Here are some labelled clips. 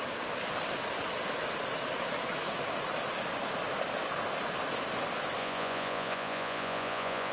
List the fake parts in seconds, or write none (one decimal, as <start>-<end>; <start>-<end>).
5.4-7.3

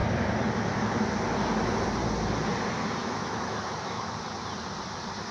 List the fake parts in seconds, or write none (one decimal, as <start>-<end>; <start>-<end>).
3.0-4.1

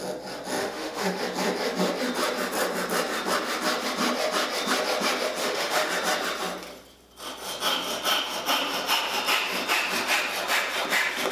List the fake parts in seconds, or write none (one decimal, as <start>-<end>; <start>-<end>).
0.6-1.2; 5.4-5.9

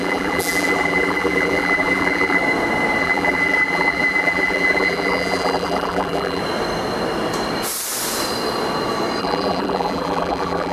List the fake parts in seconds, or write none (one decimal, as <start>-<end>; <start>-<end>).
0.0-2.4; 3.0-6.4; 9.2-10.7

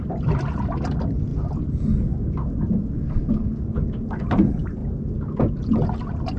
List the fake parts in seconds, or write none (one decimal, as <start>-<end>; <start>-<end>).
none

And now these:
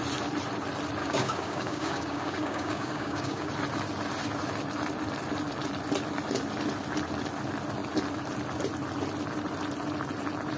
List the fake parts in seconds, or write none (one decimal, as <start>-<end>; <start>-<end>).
1.0-3.5

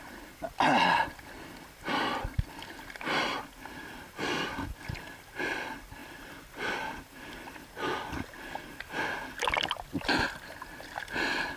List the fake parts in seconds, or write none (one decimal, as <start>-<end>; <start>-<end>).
none

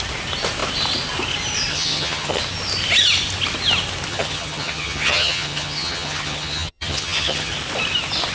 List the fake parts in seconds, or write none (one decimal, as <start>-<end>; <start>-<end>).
1.7-2.4; 4.1-7.5